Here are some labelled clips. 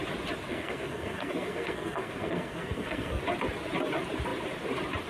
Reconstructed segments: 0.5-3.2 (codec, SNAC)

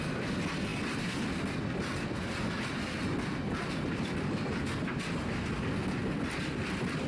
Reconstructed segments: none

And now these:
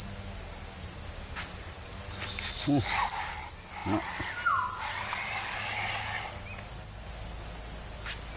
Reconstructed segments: none

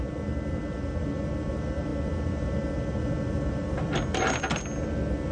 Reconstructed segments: none